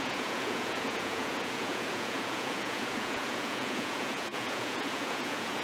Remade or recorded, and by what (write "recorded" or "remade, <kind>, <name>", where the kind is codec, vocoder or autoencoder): remade, vocoder, Vocos